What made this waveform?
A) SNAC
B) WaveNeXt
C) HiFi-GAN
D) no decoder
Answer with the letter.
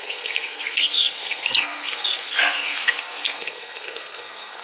A